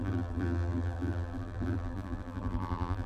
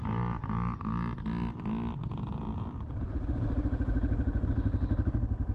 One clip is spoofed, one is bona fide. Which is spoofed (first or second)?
first